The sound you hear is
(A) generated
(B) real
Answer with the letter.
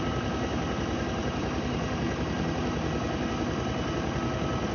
B